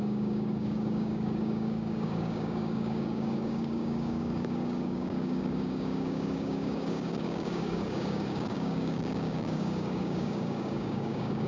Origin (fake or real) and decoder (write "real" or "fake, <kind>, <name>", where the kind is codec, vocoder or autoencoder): fake, codec, DAC